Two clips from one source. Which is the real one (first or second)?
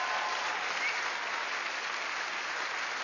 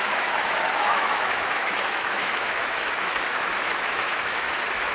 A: first